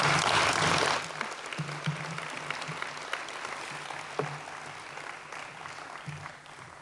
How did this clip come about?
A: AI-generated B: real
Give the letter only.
B